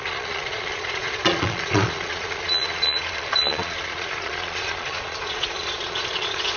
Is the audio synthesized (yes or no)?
yes